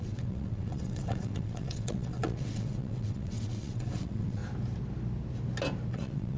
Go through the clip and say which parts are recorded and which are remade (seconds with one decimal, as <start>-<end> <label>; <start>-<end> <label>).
0.0-4.4 remade; 4.4-5.9 recorded; 5.9-6.4 remade